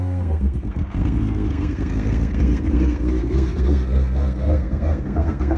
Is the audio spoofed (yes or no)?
yes